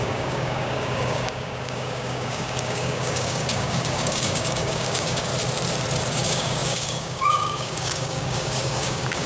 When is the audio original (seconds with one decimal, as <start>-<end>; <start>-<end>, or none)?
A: 5.3-6.1